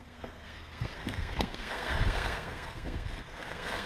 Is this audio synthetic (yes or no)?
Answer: yes